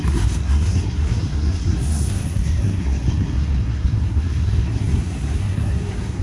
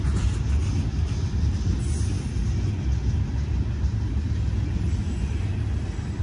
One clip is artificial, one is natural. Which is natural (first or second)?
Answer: second